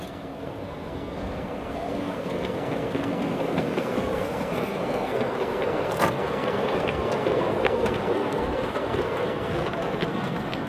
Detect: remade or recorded remade